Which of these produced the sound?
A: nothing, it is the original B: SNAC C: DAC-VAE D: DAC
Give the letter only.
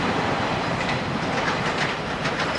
A